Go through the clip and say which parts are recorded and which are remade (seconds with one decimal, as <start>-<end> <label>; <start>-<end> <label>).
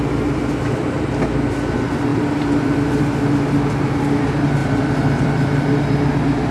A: 0.0-2.1 recorded; 2.1-3.0 remade; 3.0-4.6 recorded; 4.6-5.7 remade; 5.7-6.5 recorded